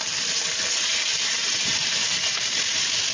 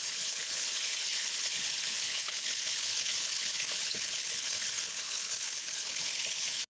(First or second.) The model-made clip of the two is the second